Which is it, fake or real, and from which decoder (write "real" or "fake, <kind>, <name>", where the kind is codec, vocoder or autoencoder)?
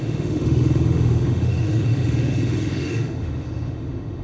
fake, autoencoder, DAC-VAE